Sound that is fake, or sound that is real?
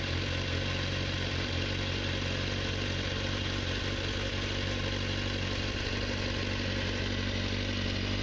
real